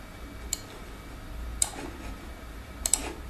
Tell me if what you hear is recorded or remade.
remade